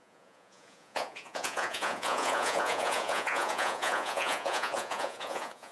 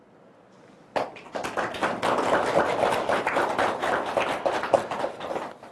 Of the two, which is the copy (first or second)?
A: first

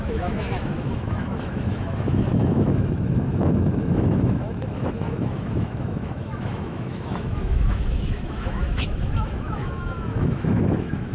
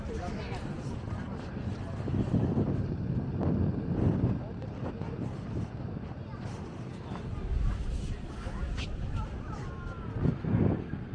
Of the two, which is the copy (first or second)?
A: first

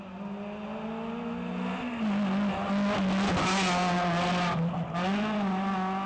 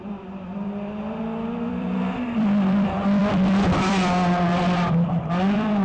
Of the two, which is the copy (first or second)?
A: second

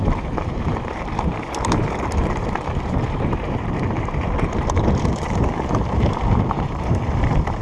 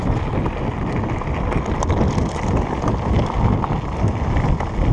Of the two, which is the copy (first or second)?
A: first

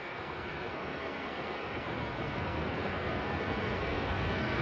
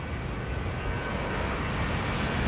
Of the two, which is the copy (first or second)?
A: first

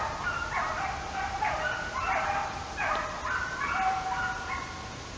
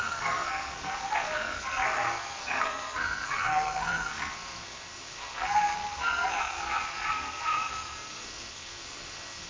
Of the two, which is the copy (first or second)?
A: second